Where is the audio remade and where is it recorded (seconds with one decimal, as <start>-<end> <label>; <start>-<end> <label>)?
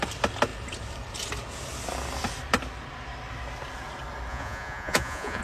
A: 0.0-4.3 recorded; 4.3-5.4 remade